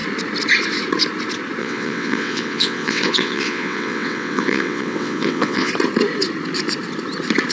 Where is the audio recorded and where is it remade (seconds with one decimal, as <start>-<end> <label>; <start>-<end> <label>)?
0.0-1.6 recorded; 1.6-5.7 remade; 5.7-7.5 recorded